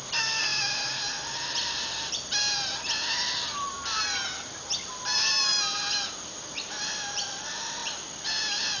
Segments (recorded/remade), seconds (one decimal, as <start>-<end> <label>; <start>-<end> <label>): 0.0-0.5 remade; 0.5-4.9 recorded; 4.9-5.5 remade; 5.5-6.9 recorded; 6.9-7.8 remade; 7.8-8.4 recorded; 8.4-8.8 remade